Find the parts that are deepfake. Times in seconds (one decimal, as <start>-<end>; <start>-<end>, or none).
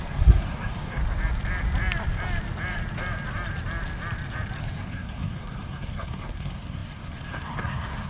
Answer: 0.0-1.0; 4.6-8.1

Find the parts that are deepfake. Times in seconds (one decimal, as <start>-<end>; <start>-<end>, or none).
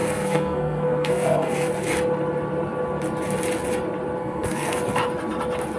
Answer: 0.0-1.7; 4.2-4.8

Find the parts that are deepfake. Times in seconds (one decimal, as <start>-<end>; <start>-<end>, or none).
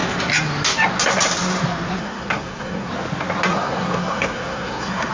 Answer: 2.0-2.9; 3.5-5.1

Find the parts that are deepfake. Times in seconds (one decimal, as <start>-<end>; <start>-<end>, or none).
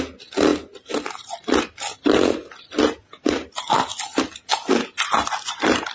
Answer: none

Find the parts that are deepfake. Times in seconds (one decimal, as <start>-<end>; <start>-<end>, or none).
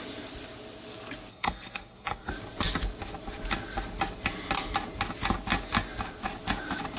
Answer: 1.3-2.3